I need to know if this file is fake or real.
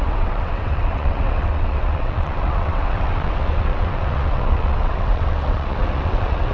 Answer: fake